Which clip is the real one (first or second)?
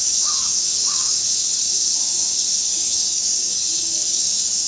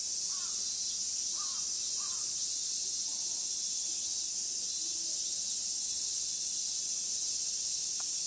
second